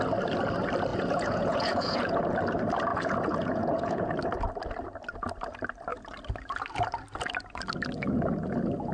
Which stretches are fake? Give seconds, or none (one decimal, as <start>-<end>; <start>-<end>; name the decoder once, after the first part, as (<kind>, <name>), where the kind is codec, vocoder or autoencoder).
0.9-2.2 (vocoder, Vocos); 2.9-4.1

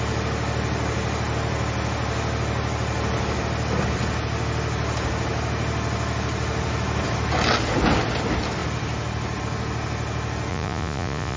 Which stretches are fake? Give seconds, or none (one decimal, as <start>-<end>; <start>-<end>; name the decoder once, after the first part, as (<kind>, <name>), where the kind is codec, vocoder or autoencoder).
10.5-11.4 (vocoder, Vocos)

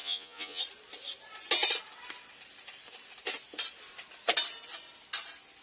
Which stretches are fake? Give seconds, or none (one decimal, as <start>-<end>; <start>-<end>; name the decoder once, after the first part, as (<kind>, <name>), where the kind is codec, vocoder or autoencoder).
0.0-0.6 (vocoder, Vocos)

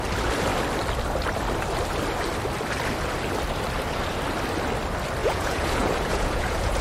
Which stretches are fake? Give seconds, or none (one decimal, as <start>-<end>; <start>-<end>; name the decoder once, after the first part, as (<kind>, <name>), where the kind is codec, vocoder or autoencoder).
5.2-6.8 (vocoder, Vocos)

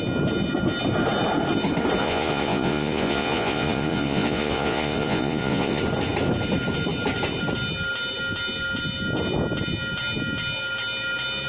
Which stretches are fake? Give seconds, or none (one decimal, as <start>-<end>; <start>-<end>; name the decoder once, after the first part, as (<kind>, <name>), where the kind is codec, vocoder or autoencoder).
2.0-5.8 (vocoder, Vocos)